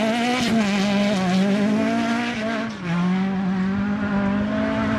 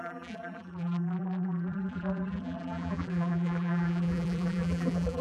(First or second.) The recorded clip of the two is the first